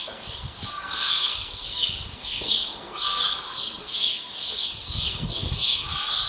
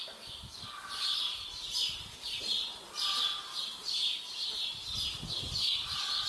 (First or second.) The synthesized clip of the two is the first